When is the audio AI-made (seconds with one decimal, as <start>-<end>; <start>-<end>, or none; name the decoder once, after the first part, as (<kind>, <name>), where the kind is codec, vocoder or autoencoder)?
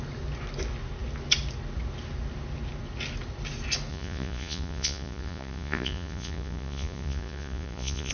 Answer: 3.9-8.1 (vocoder, Vocos)